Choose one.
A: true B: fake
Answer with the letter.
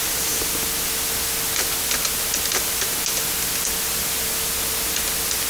A